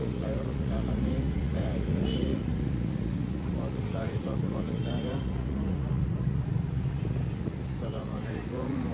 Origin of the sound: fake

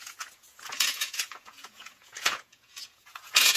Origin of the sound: fake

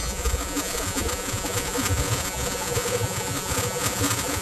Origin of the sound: fake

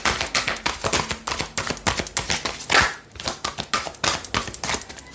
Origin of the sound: real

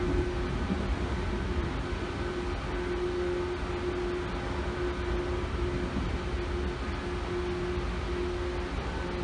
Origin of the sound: real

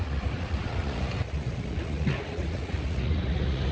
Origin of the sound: fake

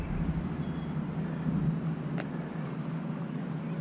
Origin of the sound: real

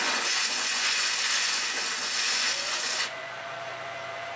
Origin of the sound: fake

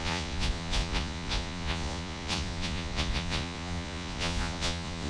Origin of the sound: fake